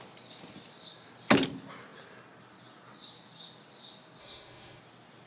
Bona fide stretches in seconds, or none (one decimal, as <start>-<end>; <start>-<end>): 0.0-4.2; 4.8-5.3